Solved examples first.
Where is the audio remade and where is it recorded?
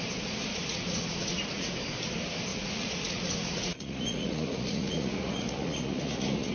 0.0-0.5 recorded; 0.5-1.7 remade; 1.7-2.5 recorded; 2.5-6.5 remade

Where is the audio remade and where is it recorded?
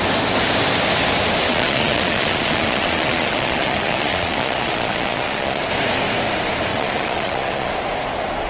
0.0-1.5 recorded; 1.5-5.6 remade; 5.6-6.7 recorded; 6.7-7.7 remade; 7.7-8.5 recorded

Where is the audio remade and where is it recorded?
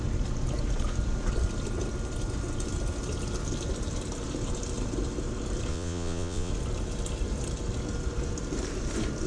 0.0-5.7 recorded; 5.7-6.5 remade; 6.5-9.3 recorded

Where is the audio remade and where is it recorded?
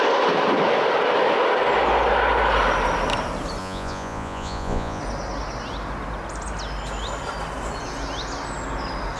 0.0-3.6 recorded; 3.6-5.0 remade; 5.0-9.2 recorded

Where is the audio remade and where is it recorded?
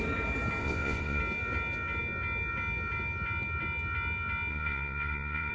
0.0-0.6 recorded; 0.6-1.2 remade; 1.2-4.5 recorded; 4.5-5.5 remade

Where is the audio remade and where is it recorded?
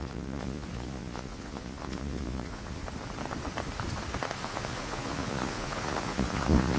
0.0-2.8 remade; 2.8-4.4 recorded; 4.4-6.8 remade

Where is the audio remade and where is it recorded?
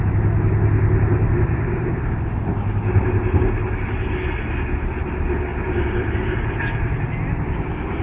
0.0-8.0 recorded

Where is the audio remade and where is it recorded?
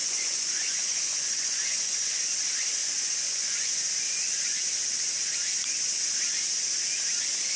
0.0-2.2 remade; 2.2-2.8 recorded; 2.8-3.7 remade; 3.7-7.6 recorded